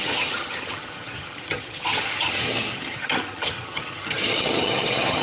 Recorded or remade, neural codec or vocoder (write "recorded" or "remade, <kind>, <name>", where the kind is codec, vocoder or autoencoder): remade, vocoder, HiFi-GAN